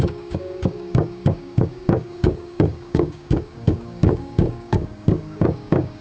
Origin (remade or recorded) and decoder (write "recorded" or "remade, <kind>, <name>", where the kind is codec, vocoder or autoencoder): remade, codec, DAC